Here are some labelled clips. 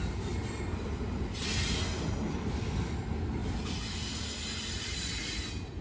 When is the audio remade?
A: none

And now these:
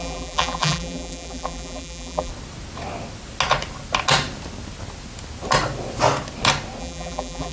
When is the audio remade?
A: 0.0-2.3 (vocoder, BigVGAN v2); 6.8-7.5

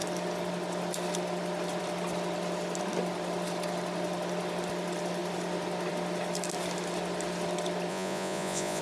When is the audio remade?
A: 7.9-8.8 (vocoder, Vocos)

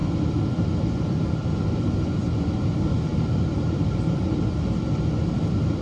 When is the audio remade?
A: 3.1-4.4 (vocoder, BigVGAN v2)

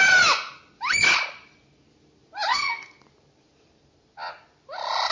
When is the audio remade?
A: 2.5-3.0 (codec, SNAC)

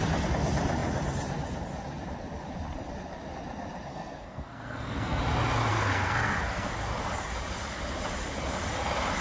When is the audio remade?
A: 3.9-5.2 (codec, SNAC); 5.7-6.7

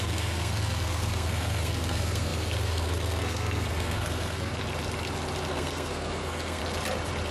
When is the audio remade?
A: 0.0-4.5 (codec, SNAC); 5.5-6.6

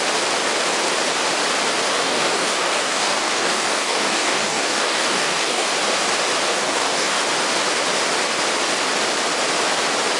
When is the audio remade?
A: 1.9-5.7 (codec, DAC); 6.5-7.2